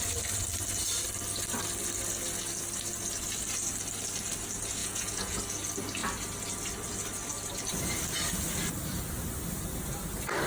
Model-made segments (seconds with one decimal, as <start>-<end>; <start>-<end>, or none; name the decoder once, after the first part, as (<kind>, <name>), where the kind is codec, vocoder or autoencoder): 4.8-5.4 (vocoder, Vocos)